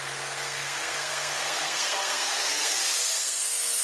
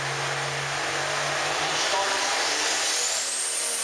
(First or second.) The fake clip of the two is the first